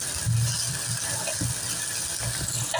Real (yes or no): yes